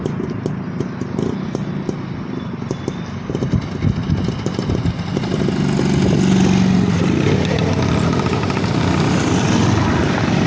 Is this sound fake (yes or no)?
no